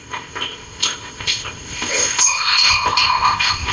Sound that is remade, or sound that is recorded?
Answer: remade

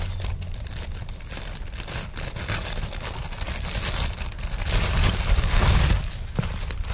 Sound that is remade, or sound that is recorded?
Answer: recorded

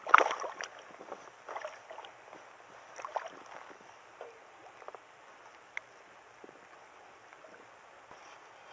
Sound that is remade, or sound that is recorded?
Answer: recorded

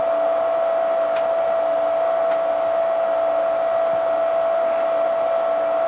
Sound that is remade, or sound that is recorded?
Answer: recorded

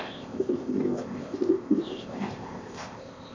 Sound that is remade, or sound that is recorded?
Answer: remade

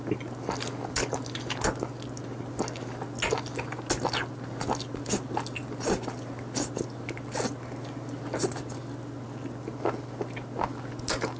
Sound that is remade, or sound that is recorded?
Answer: recorded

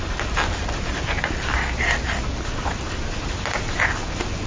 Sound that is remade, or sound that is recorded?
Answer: recorded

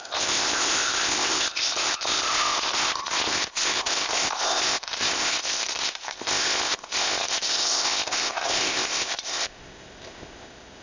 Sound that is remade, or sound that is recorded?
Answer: remade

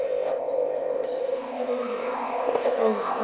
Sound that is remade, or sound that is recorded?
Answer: remade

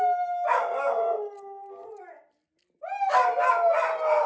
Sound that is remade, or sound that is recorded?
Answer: recorded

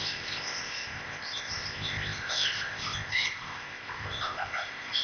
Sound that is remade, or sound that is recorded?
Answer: remade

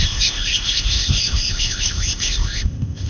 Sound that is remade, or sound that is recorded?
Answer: remade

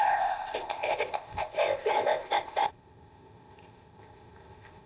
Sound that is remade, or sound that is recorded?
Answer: remade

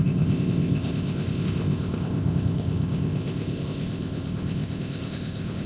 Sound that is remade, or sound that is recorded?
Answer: remade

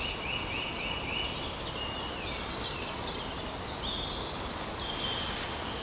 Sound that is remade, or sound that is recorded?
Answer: recorded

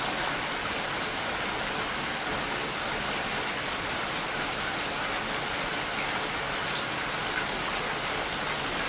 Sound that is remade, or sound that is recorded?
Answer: recorded